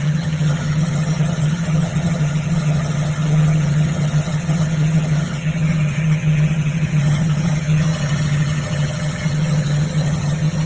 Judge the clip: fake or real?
fake